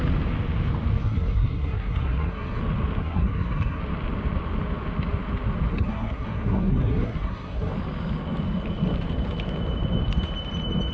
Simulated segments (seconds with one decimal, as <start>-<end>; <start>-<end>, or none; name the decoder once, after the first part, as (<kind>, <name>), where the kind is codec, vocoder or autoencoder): 1.0-2.6 (codec, SNAC); 3.0-3.8; 5.7-7.7